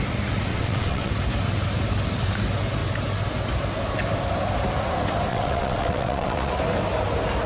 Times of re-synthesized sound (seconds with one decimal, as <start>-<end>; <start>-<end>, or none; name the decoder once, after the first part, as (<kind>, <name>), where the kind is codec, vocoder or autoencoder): 0.5-1.1 (vocoder, WaveNeXt); 5.3-6.5